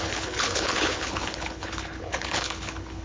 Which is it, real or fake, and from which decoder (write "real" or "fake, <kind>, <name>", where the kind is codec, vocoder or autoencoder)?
fake, codec, HILCodec